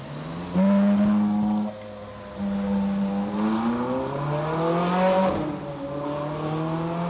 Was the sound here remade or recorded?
recorded